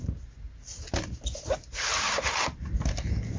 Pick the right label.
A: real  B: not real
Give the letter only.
A